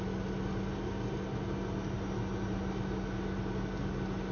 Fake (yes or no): no